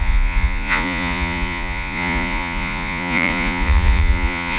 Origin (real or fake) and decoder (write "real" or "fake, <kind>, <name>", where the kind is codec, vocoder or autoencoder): fake, vocoder, Vocos